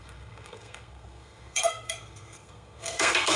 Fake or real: fake